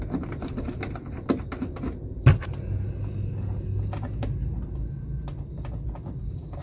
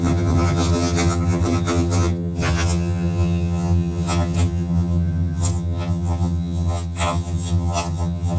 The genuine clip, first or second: first